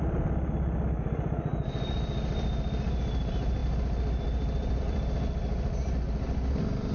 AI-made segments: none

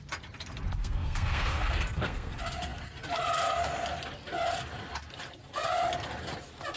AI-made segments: 0.8-2.3 (codec, SNAC)

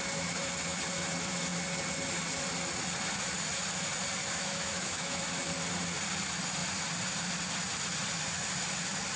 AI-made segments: 4.2-5.2 (autoencoder, DAC-VAE)

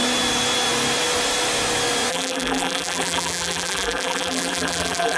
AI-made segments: 2.1-5.2 (vocoder, BigVGAN v2)